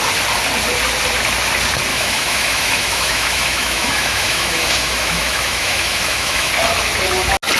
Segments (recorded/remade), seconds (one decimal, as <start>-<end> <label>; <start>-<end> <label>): 0.0-1.9 recorded; 1.9-6.5 remade; 6.5-7.6 recorded